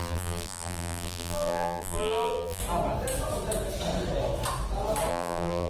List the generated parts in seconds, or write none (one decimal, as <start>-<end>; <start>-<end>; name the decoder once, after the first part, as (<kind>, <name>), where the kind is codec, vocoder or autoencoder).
0.0-2.6 (vocoder, BigVGAN v2); 5.1-5.7